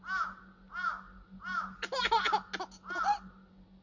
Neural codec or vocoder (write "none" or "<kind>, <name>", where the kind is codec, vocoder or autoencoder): none